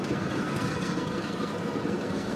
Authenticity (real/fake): fake